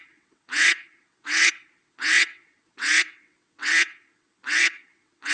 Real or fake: fake